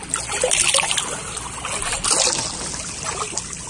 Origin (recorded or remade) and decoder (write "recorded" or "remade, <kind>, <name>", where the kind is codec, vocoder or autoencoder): recorded